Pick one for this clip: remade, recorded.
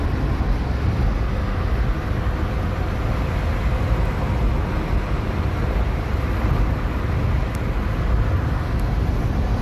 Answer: recorded